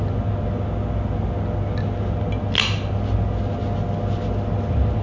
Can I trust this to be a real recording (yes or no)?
yes